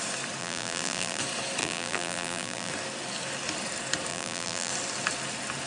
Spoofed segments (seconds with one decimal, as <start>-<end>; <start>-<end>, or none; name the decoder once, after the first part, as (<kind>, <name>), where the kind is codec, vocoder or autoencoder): 0.4-1.2 (vocoder, BigVGAN v2); 1.6-2.7; 4.1-4.7